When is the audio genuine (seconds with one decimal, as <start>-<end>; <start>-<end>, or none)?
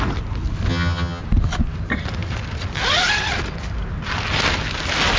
0.0-0.7; 1.2-5.2